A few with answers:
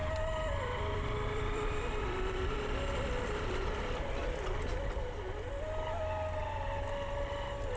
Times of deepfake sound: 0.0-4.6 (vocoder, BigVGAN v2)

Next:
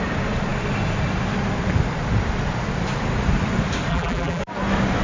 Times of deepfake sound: 3.9-4.4 (vocoder, BigVGAN v2)

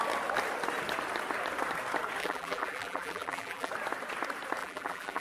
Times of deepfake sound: 2.2-3.7 (vocoder, BigVGAN v2); 4.6-5.2